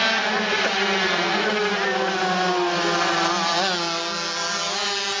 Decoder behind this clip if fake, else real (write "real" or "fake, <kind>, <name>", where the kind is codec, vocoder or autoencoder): real